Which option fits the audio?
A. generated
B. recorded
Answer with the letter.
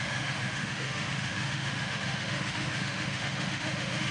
A